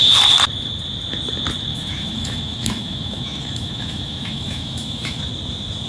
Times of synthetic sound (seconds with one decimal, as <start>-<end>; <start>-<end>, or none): 1.7-5.2